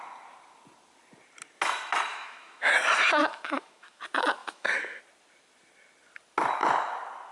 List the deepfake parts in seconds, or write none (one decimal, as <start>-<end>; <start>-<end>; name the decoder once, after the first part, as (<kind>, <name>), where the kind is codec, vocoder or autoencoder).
2.1-2.7 (autoencoder, DAC-VAE); 3.2-4.0; 4.4-5.0